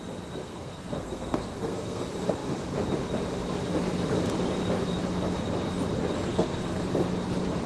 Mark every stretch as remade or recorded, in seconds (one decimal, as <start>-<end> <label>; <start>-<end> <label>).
0.0-0.4 recorded; 0.4-2.0 remade; 2.0-6.3 recorded; 6.3-6.8 remade; 6.8-7.7 recorded